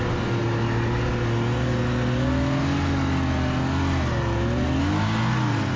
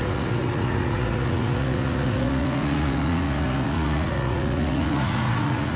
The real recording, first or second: first